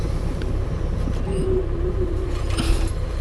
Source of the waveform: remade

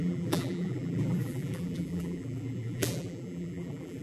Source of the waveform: remade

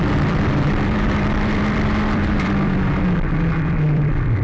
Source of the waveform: remade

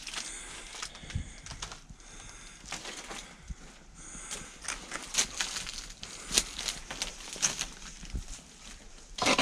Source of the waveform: recorded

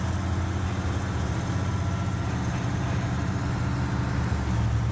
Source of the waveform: recorded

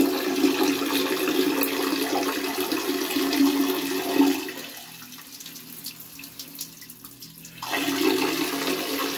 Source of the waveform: recorded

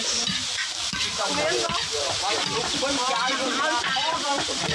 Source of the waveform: remade